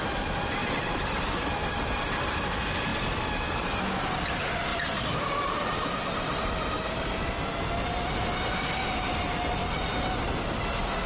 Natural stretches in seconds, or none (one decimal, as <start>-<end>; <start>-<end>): 0.0-0.6; 2.1-4.7; 6.4-11.1

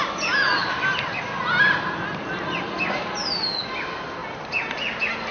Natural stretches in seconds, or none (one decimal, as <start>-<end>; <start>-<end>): 0.0-5.3

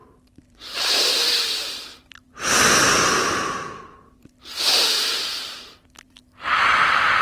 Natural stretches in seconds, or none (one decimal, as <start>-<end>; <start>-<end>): 1.1-1.9; 6.2-7.2

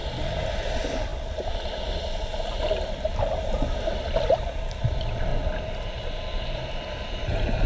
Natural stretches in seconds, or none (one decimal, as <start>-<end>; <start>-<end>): 0.0-0.7; 1.1-2.9; 3.6-4.3; 5.3-5.8

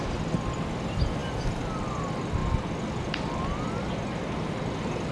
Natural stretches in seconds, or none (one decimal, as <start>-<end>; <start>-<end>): 0.0-5.1

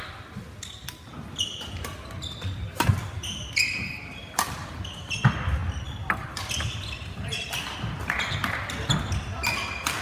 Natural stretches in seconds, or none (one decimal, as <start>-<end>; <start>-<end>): 0.0-5.6; 7.2-10.0

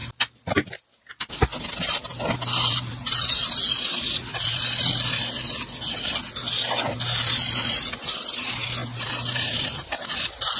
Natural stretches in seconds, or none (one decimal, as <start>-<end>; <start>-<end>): 0.0-3.0; 3.9-8.8; 10.1-10.6